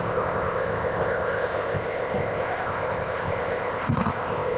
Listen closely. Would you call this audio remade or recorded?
remade